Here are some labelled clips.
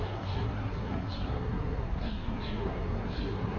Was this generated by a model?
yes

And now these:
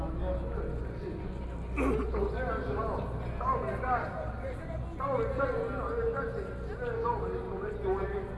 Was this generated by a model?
no